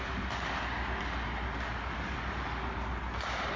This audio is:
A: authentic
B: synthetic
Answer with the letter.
A